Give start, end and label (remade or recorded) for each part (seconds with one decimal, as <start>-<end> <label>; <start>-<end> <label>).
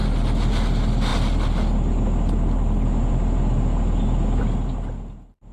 0.0-5.5 recorded